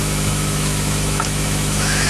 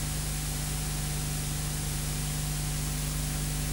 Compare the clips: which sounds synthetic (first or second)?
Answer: first